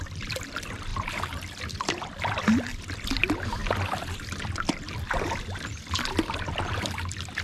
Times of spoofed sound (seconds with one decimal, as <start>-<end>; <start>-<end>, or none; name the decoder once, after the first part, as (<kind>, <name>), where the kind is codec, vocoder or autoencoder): 0.0-3.6 (vocoder, BigVGAN v2); 4.2-7.4